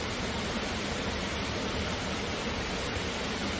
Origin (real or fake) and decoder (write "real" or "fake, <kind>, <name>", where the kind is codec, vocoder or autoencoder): fake, vocoder, BigVGAN v2